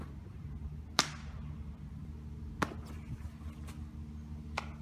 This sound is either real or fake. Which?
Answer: real